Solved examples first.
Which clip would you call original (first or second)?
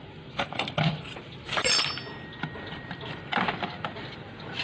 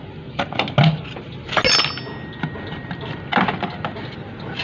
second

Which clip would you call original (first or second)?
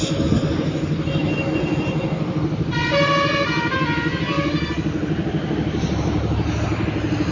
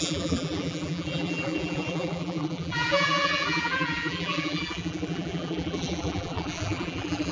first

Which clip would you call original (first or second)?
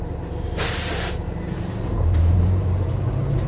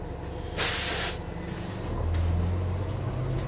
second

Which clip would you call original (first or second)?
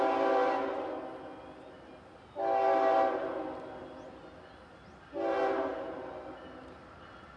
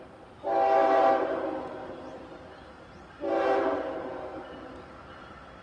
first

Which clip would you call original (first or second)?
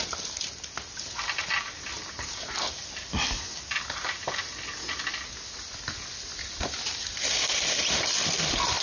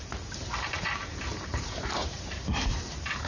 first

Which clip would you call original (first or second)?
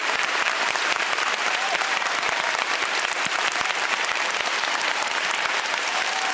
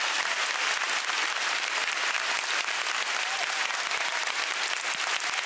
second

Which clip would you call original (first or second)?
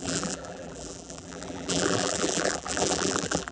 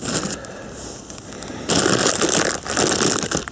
second